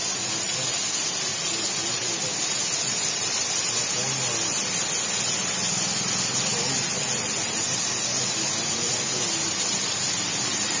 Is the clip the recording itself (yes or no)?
yes